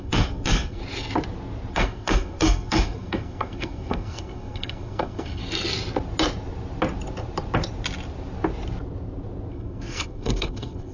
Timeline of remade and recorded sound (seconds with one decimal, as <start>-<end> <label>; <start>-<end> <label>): 0.0-0.8 remade; 0.8-1.7 recorded; 1.7-5.4 remade; 5.4-9.5 recorded; 9.5-10.9 remade